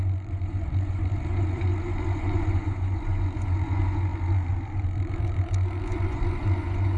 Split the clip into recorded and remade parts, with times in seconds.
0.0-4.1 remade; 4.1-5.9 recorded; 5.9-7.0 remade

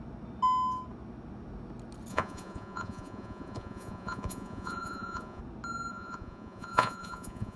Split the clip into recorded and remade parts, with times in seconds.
0.0-2.1 recorded; 2.1-5.4 remade; 5.4-5.9 recorded; 5.9-7.6 remade

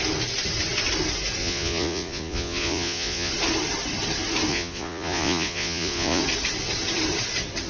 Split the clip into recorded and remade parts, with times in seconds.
0.0-1.4 recorded; 1.4-3.3 remade; 3.3-4.5 recorded; 4.5-6.2 remade; 6.2-7.7 recorded

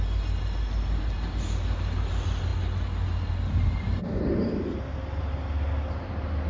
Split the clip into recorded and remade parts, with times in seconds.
0.0-6.5 recorded

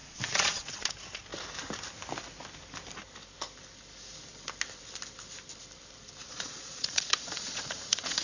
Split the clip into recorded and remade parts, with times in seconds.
0.0-0.9 remade; 0.9-6.2 recorded; 6.2-8.2 remade

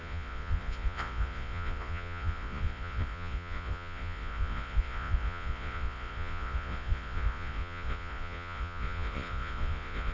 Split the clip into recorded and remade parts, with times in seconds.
0.0-10.1 remade

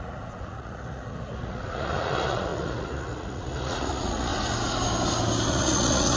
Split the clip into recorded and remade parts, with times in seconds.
0.0-4.3 remade; 4.3-5.5 recorded; 5.5-6.2 remade

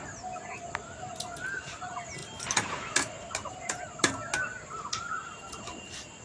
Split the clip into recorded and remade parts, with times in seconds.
0.0-6.2 recorded